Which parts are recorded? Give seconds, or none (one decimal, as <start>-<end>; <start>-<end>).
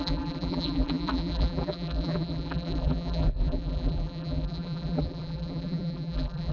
none